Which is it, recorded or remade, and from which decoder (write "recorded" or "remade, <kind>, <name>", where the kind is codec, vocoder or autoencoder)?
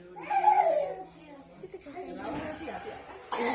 recorded